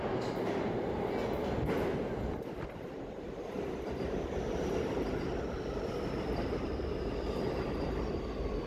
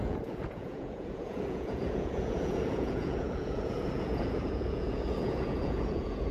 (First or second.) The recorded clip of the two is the first